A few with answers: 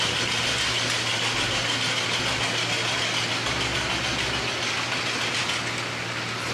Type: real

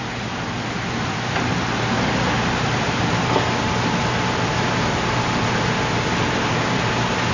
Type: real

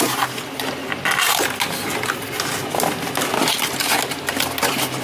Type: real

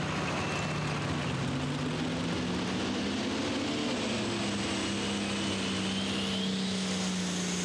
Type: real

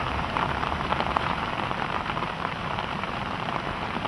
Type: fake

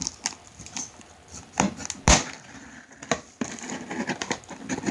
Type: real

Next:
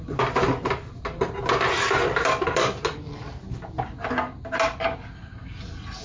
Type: real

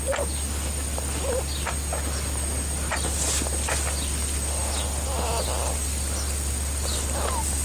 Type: real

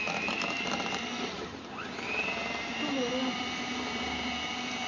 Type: fake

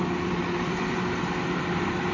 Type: fake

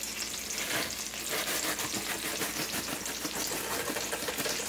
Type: real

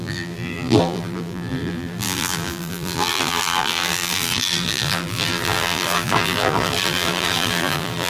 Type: fake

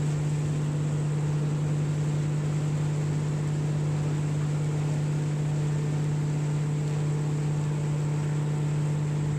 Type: real